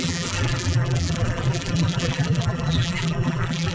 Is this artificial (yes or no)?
yes